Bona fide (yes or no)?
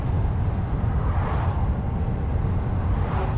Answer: yes